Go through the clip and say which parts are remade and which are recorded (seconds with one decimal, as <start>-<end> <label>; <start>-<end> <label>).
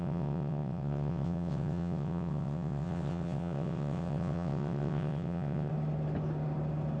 0.0-5.7 remade; 5.7-7.0 recorded